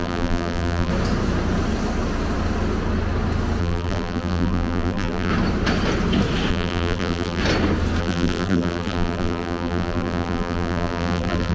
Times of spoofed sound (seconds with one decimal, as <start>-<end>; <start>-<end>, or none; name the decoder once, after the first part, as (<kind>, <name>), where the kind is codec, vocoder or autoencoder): 0.0-0.9 (vocoder, BigVGAN v2); 3.6-5.3; 6.5-7.4; 8.0-11.5

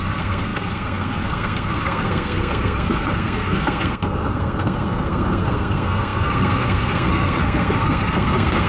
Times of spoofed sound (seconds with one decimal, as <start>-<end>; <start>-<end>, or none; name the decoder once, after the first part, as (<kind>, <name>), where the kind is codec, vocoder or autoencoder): 0.0-8.7 (codec, SNAC)

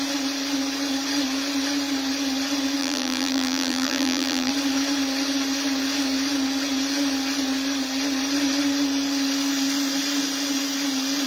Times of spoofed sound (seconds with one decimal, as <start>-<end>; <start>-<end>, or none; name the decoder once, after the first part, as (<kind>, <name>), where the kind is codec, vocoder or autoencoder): 2.8-4.5 (vocoder, BigVGAN v2)

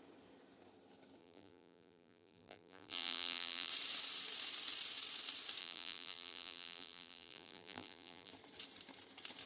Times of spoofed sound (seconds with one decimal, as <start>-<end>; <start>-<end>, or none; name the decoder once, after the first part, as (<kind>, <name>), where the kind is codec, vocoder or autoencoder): 1.2-3.7 (vocoder, BigVGAN v2); 5.6-8.3

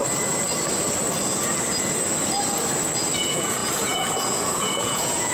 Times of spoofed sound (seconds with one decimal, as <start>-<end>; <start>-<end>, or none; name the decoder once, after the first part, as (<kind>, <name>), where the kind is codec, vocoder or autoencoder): 3.2-5.3 (vocoder, Vocos)

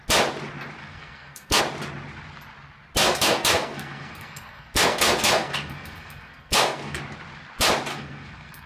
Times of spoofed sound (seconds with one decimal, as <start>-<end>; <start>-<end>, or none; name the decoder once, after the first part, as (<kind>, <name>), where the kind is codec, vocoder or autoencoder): 0.8-1.6 (codec, SNAC); 3.0-7.0; 7.9-8.7